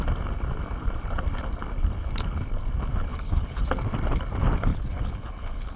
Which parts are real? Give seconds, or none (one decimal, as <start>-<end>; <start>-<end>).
0.0-3.1; 3.6-4.7